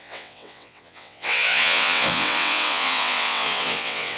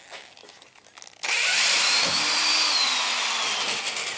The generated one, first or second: first